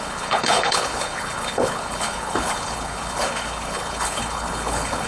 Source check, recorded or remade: remade